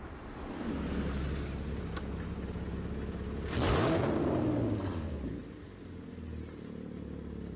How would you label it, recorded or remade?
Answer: recorded